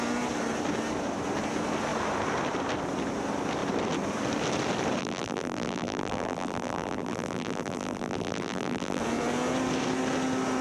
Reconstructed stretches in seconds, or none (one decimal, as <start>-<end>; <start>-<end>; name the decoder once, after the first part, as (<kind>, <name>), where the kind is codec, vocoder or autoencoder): 5.0-9.0 (vocoder, BigVGAN v2)